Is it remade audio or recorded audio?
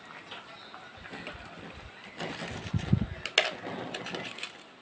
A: recorded